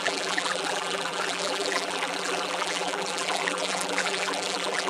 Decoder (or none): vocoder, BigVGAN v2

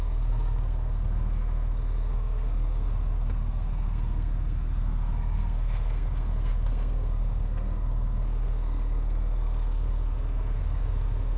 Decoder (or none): codec, SNAC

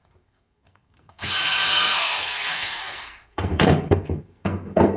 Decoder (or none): codec, SNAC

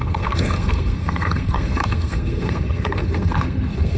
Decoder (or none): codec, SNAC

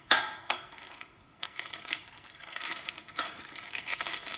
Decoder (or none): codec, SNAC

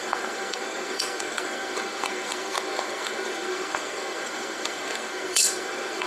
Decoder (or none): codec, SNAC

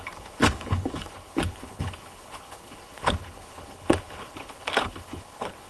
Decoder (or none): codec, HILCodec